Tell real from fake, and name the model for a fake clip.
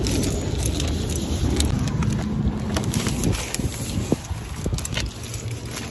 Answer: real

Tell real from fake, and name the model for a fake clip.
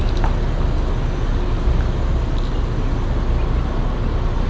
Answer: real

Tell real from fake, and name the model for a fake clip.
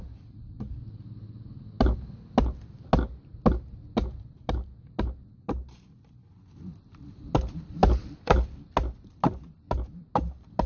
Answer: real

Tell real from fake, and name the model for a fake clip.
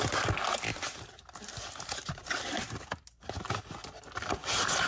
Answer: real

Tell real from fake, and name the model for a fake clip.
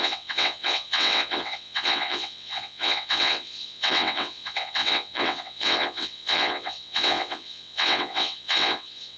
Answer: fake, vocoder, WaveNeXt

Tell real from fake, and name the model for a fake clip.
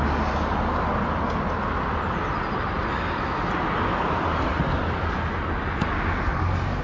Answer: real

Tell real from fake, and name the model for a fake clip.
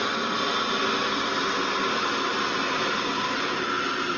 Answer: real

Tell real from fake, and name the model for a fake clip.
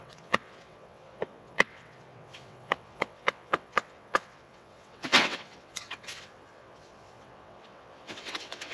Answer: fake, vocoder, WaveNeXt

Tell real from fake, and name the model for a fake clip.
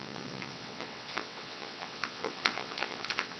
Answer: fake, vocoder, WaveNeXt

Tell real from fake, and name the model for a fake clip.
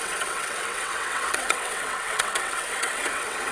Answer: fake, vocoder, WaveNeXt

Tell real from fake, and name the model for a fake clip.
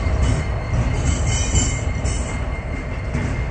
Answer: real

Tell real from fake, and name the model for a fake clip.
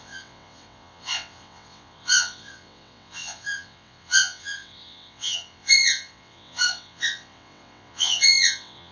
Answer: fake, vocoder, WaveNeXt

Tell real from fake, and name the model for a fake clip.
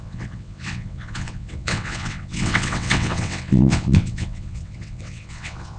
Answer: fake, vocoder, WaveNeXt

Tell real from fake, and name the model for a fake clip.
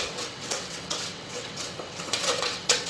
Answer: fake, vocoder, WaveNeXt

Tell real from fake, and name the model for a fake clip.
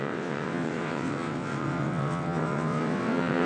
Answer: fake, vocoder, WaveNeXt